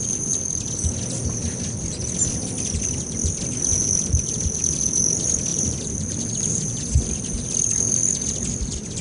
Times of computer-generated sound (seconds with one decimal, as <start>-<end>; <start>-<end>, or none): 5.5-6.8